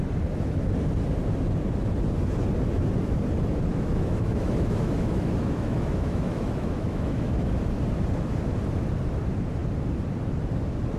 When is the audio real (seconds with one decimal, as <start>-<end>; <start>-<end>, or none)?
0.0-3.7; 7.6-11.0